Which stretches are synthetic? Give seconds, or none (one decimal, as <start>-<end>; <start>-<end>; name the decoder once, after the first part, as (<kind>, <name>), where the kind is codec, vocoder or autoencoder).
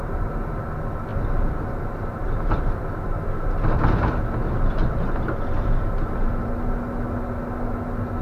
none